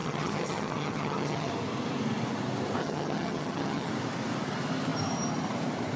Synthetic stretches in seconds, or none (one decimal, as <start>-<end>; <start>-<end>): 0.0-1.5; 2.8-3.9